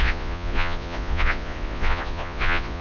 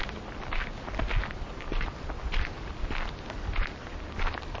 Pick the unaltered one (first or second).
second